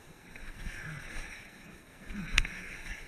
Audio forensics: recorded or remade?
remade